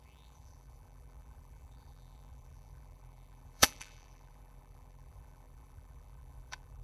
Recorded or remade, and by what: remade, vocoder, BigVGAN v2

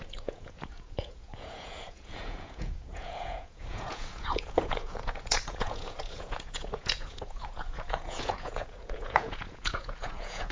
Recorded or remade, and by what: remade, vocoder, Vocos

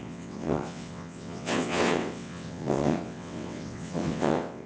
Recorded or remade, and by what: remade, vocoder, WaveNeXt